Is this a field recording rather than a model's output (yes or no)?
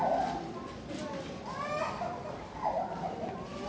yes